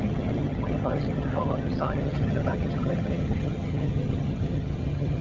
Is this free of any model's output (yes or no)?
no